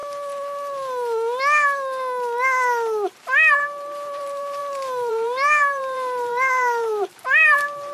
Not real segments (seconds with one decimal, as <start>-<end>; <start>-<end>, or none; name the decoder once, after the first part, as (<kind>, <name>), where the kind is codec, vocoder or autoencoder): 3.5-4.6 (vocoder, BigVGAN v2); 5.1-7.9